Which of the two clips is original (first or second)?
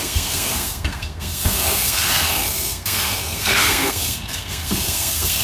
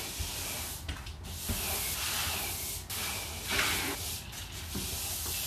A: second